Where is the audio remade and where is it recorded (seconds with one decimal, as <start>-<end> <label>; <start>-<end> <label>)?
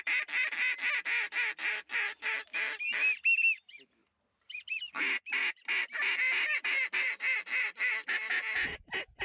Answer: 0.0-9.2 recorded